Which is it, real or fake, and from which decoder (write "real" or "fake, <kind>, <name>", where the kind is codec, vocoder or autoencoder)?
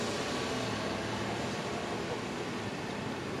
real